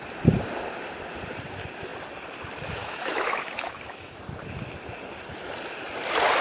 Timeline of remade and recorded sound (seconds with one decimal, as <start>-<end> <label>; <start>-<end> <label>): 0.0-2.8 recorded; 2.8-4.2 remade; 4.2-6.4 recorded